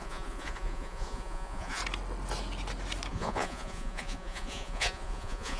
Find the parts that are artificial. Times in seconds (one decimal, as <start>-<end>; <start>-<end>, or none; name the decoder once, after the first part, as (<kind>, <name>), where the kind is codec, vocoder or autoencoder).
0.0-1.8 (vocoder, Vocos); 3.1-5.6